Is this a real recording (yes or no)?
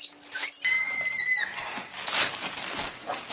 yes